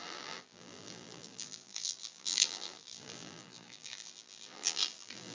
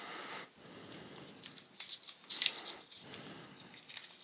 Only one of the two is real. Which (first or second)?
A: second